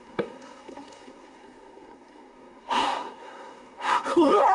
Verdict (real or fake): fake